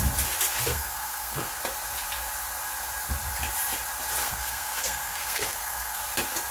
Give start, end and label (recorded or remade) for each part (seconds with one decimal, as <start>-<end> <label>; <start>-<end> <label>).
0.0-0.7 recorded; 0.7-1.6 remade; 1.6-4.2 recorded; 4.2-6.0 remade; 6.0-6.5 recorded